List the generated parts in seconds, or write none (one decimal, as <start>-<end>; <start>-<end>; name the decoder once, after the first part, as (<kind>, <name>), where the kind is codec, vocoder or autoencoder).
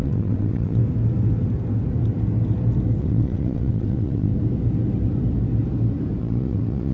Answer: 0.0-0.8 (vocoder, WaveNeXt); 3.0-4.3; 6.2-6.9